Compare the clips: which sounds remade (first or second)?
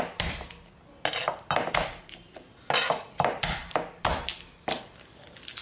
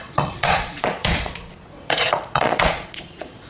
second